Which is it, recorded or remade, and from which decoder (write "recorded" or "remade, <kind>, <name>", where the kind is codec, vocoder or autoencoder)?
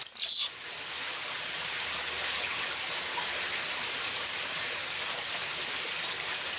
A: remade, vocoder, BigVGAN v2